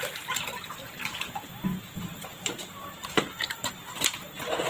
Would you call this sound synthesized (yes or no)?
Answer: yes